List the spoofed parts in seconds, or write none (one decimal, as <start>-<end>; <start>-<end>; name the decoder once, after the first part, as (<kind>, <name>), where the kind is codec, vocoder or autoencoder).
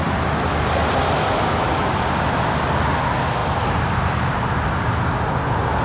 3.4-5.2 (vocoder, BigVGAN v2)